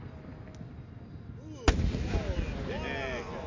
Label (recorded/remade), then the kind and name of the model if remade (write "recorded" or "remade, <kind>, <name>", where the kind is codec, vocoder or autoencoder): recorded